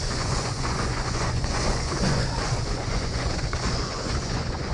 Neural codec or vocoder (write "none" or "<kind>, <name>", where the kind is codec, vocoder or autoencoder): vocoder, Vocos